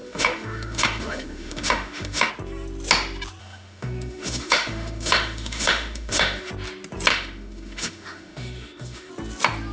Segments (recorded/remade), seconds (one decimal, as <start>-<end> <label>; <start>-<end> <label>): 0.0-2.3 remade; 2.3-3.4 recorded; 3.4-6.5 remade; 6.5-7.1 recorded; 7.1-9.1 remade; 9.1-9.7 recorded